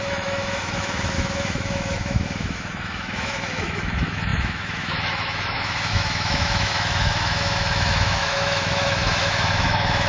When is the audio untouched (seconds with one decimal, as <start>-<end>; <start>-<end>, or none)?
none

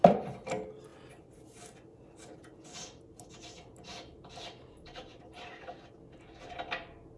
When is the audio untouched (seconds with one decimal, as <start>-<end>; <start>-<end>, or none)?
0.0-7.2

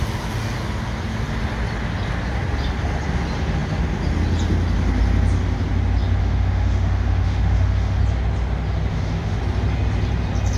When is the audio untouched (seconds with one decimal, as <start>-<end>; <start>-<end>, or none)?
0.0-6.2; 8.0-8.9; 9.4-10.6

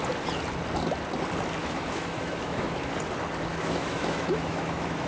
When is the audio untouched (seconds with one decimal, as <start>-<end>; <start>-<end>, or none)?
0.0-1.6; 2.9-3.5

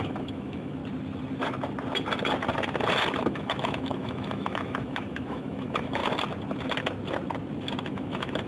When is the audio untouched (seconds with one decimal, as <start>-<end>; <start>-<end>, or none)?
0.8-3.2; 6.0-7.9

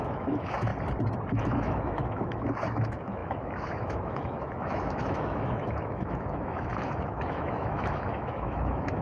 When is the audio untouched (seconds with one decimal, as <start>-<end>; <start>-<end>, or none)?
0.7-1.3

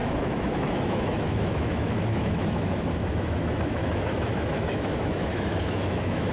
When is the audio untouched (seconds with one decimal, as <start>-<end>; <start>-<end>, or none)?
none